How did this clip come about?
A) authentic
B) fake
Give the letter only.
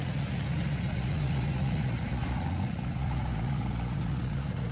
B